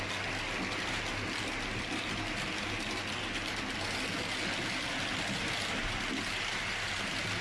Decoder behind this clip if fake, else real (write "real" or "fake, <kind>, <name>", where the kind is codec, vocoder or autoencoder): real